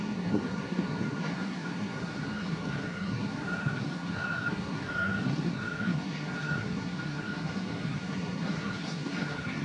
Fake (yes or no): yes